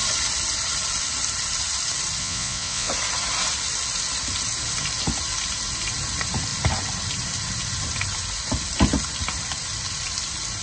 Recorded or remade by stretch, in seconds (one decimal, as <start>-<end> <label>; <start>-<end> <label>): 0.0-2.2 recorded; 2.2-2.9 remade; 2.9-10.6 recorded